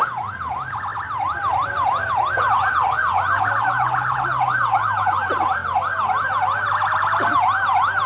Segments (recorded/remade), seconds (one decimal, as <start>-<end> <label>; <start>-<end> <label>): 0.0-8.1 recorded